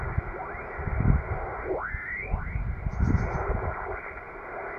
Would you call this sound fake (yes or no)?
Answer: no